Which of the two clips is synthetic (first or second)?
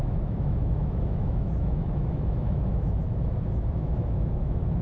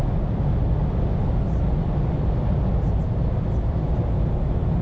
first